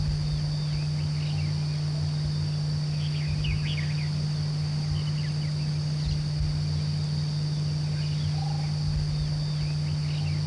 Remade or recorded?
recorded